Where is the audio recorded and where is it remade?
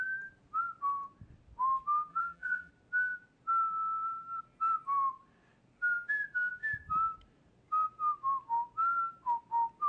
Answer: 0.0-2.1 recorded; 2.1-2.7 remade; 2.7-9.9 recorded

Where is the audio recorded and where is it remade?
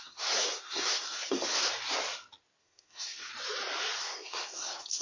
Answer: 0.0-1.7 remade; 1.7-2.6 recorded; 2.6-3.3 remade; 3.3-4.0 recorded; 4.0-5.0 remade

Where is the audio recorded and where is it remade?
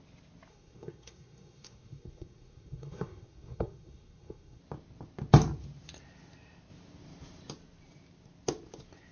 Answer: 0.0-0.5 recorded; 0.5-4.6 remade; 4.6-9.1 recorded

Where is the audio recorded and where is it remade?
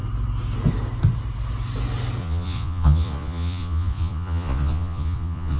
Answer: 0.0-2.2 recorded; 2.2-5.6 remade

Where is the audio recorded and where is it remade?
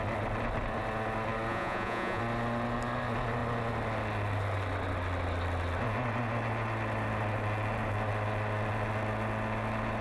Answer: 0.0-1.5 recorded; 1.5-2.2 remade; 2.2-10.0 recorded